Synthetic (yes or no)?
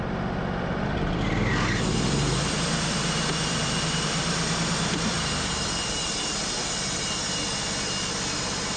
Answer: yes